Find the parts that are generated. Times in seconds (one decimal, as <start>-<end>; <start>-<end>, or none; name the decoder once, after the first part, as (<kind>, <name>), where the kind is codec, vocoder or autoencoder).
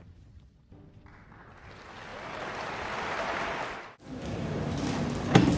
none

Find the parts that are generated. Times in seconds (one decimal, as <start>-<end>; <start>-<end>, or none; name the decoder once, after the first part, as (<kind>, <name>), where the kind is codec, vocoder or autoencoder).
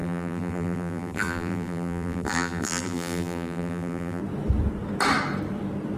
0.0-4.2 (vocoder, BigVGAN v2)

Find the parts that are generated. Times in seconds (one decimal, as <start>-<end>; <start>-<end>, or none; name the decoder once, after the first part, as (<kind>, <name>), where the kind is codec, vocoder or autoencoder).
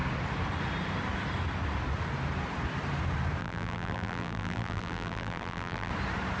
3.4-5.9 (vocoder, BigVGAN v2)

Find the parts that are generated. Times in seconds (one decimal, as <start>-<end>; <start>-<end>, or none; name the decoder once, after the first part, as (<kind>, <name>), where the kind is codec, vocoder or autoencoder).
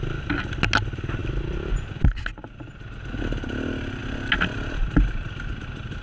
1.2-1.7 (vocoder, BigVGAN v2)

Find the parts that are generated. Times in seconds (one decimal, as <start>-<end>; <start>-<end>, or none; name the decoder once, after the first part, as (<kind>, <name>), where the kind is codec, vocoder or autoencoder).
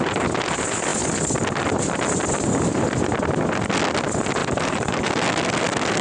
4.4-5.1 (vocoder, BigVGAN v2)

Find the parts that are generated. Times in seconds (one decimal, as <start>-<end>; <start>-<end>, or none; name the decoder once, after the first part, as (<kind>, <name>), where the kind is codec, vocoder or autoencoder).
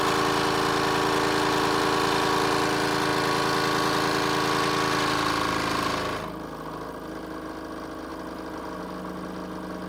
none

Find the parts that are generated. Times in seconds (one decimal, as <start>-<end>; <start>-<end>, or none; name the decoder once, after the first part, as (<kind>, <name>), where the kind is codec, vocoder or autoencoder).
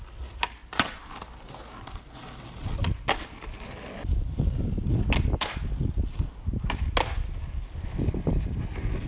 0.6-1.6 (vocoder, BigVGAN v2)